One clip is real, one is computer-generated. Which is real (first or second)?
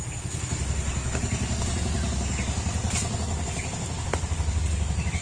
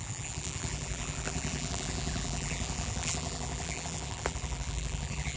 first